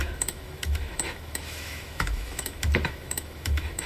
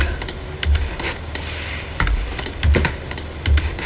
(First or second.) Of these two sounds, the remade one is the first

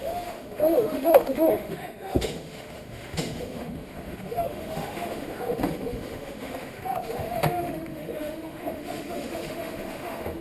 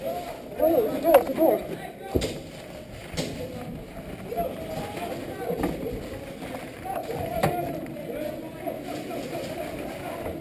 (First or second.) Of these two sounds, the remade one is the first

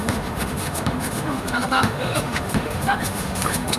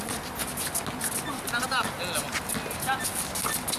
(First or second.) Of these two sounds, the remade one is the first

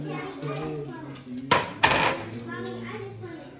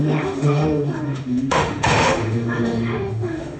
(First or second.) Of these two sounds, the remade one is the second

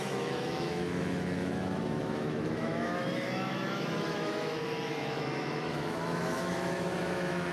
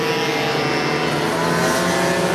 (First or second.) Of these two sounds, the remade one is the first